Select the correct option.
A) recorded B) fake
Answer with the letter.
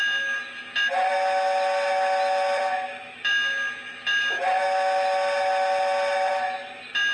A